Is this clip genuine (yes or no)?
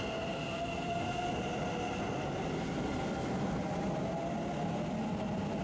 yes